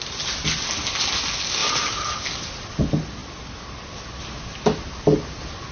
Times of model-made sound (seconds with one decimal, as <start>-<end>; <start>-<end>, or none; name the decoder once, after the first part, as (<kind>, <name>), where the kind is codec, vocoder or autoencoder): none